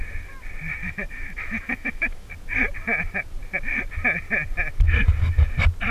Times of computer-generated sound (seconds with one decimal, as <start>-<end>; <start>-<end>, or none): 0.8-2.3